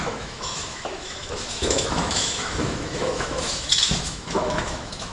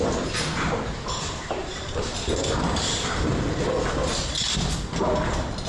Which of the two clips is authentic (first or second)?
second